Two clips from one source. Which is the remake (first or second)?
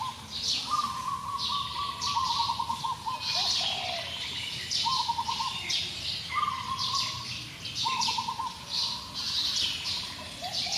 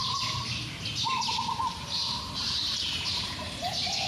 second